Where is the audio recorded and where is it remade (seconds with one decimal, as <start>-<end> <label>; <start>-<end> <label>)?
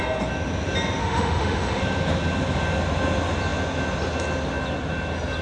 0.0-1.0 recorded; 1.0-1.8 remade; 1.8-5.4 recorded